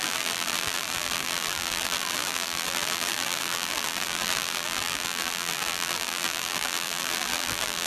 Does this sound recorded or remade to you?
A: remade